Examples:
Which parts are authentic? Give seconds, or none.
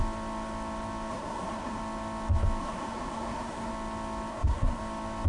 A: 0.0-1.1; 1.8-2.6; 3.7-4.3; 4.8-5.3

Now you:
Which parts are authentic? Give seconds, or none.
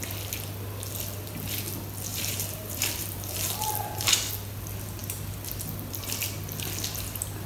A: 0.0-2.1; 4.3-7.5